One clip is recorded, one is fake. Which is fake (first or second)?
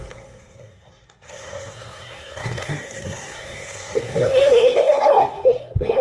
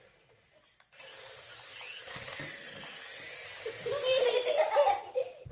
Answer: first